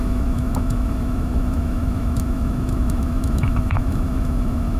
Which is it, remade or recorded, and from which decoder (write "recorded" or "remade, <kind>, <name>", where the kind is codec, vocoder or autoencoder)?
remade, autoencoder, DAC-VAE